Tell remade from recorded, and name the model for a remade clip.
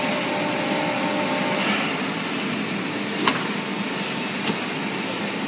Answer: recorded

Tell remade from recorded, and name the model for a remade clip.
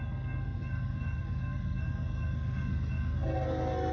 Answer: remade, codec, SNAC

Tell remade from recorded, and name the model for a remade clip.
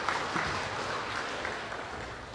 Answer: recorded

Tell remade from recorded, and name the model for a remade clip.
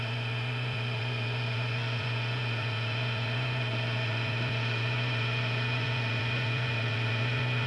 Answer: remade, vocoder, Vocos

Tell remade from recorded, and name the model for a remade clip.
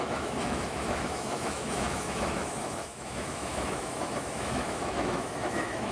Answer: remade, autoencoder, DAC-VAE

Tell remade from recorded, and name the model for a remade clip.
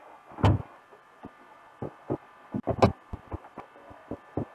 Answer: recorded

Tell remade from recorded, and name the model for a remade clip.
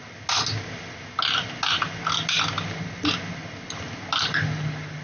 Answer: recorded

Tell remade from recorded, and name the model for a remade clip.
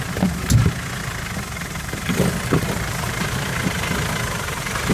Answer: recorded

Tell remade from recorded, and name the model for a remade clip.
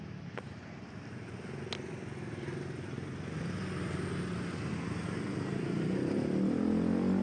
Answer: recorded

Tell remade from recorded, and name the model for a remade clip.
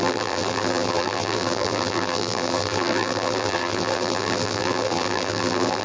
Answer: remade, vocoder, BigVGAN v2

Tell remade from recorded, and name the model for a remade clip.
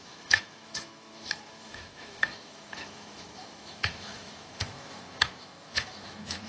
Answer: remade, autoencoder, DAC-VAE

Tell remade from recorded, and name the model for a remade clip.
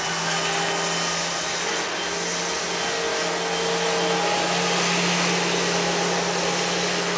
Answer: recorded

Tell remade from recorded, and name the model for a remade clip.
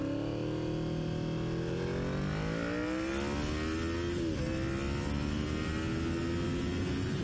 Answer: recorded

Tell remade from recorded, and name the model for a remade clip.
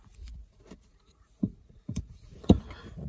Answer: remade, vocoder, Vocos